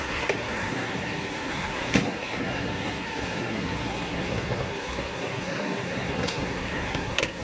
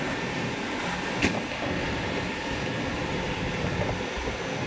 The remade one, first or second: first